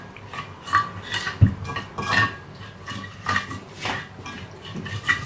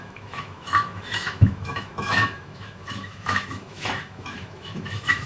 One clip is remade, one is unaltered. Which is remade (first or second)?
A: second